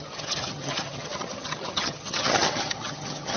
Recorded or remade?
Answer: remade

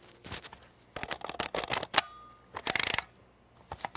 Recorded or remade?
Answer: recorded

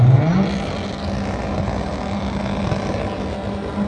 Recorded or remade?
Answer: recorded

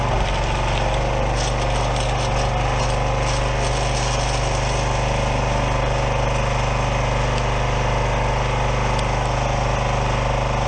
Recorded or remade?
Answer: recorded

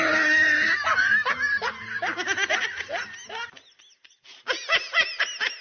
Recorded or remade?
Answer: recorded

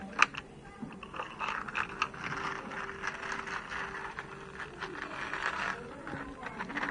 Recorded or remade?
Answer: recorded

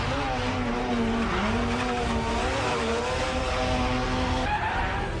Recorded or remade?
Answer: recorded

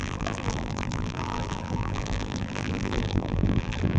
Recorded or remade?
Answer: remade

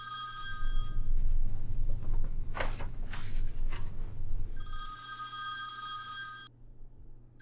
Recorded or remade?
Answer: recorded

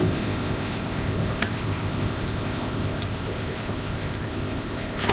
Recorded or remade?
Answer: remade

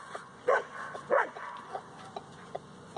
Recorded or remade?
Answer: remade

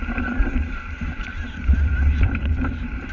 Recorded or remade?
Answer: remade